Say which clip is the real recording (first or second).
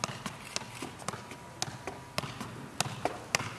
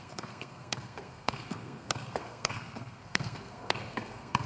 first